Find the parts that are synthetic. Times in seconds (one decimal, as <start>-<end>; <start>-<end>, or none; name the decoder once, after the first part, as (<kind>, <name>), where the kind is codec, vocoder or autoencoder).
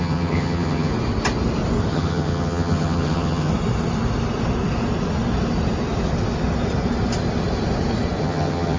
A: 0.0-0.9 (vocoder, HiFi-GAN); 1.9-3.5; 8.2-8.8